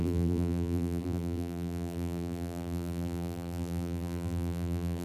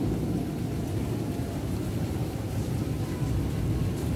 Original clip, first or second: second